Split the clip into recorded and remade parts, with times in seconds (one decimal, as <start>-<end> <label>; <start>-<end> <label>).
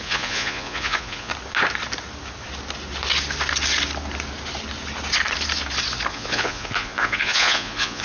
0.0-1.3 remade; 1.3-6.1 recorded; 6.1-8.0 remade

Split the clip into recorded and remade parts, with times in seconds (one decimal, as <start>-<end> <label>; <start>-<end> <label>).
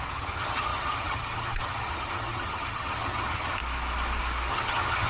0.0-3.6 remade; 3.6-4.5 recorded; 4.5-5.1 remade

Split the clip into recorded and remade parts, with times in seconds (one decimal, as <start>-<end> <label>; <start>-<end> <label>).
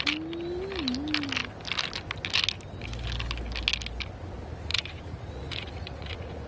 0.0-4.7 recorded; 4.7-6.5 remade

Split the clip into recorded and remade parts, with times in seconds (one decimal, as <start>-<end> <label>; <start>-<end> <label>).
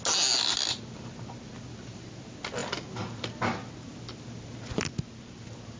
0.0-5.8 recorded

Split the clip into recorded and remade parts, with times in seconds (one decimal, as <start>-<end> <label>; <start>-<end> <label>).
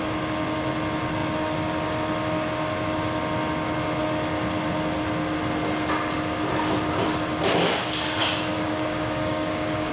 0.0-8.2 recorded; 8.2-9.9 remade